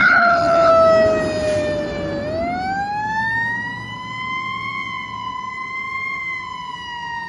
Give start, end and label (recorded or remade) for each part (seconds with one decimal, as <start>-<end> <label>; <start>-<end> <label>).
0.0-0.7 remade; 0.7-7.3 recorded